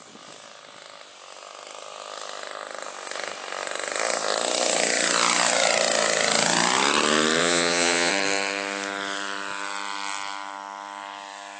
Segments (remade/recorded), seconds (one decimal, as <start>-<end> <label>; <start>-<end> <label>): 0.0-7.4 recorded; 7.4-8.1 remade; 8.1-11.6 recorded